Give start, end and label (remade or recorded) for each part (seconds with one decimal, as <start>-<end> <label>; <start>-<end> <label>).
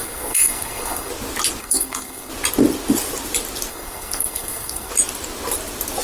0.0-1.1 remade; 1.1-1.6 recorded; 1.6-2.3 remade; 2.3-3.7 recorded; 3.7-4.9 remade; 4.9-6.0 recorded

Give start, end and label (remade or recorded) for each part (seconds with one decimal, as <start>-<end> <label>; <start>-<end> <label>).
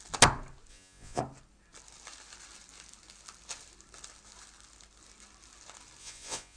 0.0-0.7 recorded; 0.7-1.2 remade; 1.2-6.0 recorded; 6.0-6.6 remade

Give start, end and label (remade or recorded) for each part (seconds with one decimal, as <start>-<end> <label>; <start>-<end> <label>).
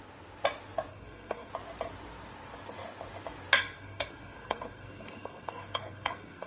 0.0-0.9 recorded; 0.9-1.5 remade; 1.5-3.6 recorded; 3.6-6.5 remade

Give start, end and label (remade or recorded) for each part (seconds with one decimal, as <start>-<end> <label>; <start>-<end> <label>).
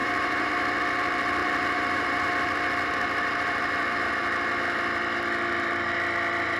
0.0-0.5 remade; 0.5-1.4 recorded; 1.4-2.3 remade; 2.3-6.6 recorded